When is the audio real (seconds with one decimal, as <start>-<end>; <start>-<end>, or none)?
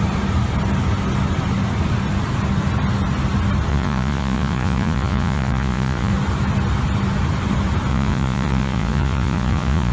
0.0-3.7; 6.1-7.9